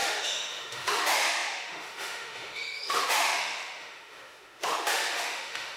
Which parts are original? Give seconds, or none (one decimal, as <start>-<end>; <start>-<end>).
none